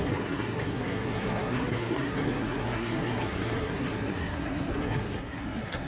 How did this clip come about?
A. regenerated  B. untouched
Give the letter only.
A